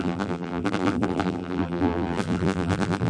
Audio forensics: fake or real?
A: fake